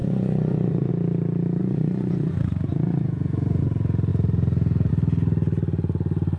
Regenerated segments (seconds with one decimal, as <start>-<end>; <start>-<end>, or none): 0.0-0.9; 1.6-3.6